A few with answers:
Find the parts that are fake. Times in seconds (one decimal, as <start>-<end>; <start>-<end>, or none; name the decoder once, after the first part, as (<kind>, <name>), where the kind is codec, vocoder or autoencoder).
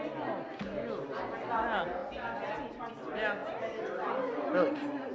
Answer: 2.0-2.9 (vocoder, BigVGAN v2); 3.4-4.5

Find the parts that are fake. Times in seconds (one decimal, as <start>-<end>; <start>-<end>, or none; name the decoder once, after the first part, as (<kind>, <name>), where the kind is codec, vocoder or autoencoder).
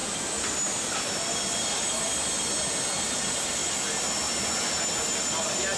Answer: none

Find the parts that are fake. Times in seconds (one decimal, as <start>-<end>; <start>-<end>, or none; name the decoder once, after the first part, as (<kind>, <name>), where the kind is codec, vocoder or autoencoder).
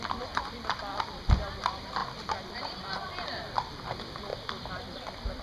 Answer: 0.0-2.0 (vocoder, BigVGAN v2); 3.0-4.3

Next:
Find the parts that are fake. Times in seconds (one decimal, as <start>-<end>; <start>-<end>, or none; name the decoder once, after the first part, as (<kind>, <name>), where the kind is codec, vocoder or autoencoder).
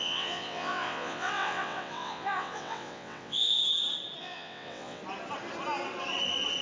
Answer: 0.0-3.6 (vocoder, WaveNeXt); 4.2-5.0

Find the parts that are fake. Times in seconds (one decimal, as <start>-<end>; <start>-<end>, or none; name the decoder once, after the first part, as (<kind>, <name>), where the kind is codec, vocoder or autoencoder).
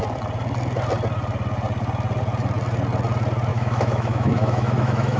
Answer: 3.5-5.2 (autoencoder, DAC-VAE)